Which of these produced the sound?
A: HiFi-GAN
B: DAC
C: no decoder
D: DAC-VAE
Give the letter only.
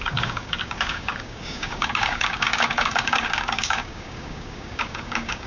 B